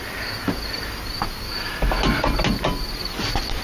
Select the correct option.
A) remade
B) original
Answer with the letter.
B